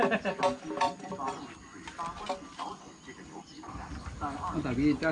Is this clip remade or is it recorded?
recorded